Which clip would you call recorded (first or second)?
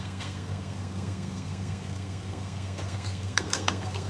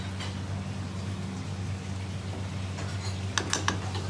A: second